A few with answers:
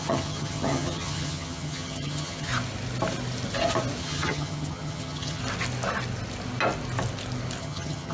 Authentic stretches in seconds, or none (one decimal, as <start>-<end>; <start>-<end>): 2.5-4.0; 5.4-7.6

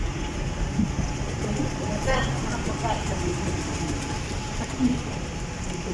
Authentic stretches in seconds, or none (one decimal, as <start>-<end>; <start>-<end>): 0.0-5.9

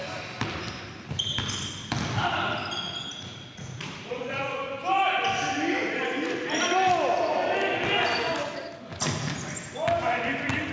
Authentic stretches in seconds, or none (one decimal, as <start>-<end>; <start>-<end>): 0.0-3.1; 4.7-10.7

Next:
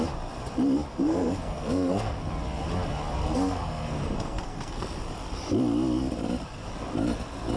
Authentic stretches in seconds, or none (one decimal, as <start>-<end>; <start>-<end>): 0.0-0.9; 2.2-3.2; 5.0-7.6